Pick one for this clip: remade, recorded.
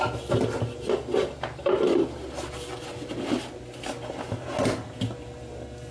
recorded